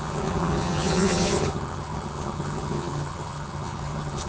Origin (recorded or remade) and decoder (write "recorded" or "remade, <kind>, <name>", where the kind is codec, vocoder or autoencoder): remade, vocoder, HiFi-GAN